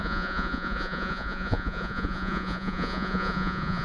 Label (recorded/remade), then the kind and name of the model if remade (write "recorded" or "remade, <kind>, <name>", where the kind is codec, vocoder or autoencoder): remade, vocoder, Vocos